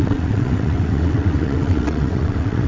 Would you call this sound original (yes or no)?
no